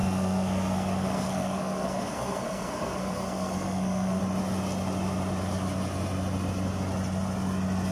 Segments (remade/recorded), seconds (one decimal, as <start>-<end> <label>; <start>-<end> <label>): 0.0-4.2 remade; 4.2-7.9 recorded